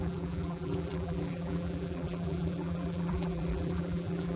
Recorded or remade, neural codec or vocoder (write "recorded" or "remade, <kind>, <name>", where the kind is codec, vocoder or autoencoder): remade, vocoder, BigVGAN v2